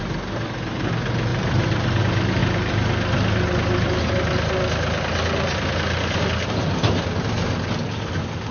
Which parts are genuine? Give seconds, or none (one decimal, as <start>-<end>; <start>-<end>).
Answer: 0.0-1.3; 2.0-8.5